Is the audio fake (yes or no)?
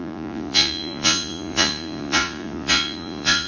yes